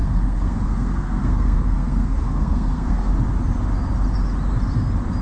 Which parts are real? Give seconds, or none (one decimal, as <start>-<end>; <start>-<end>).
3.1-5.2